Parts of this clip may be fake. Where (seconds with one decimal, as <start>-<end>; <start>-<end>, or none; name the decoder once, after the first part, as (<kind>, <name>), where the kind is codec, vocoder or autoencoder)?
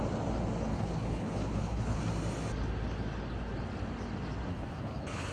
0.7-2.0 (codec, HILCodec); 4.5-5.3